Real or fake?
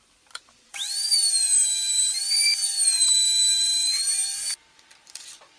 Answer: fake